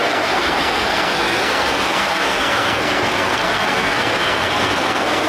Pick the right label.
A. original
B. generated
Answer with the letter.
B